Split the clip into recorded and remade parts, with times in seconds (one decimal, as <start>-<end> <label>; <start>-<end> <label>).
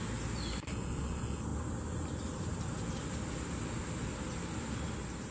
0.0-5.3 recorded